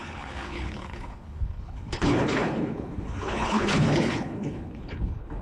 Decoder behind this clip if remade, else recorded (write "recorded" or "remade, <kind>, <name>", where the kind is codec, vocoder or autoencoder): remade, codec, HILCodec